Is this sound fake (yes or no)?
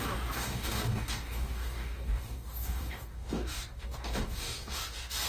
yes